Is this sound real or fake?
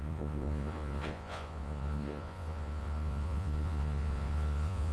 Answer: fake